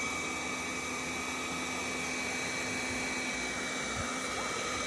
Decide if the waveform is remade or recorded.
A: recorded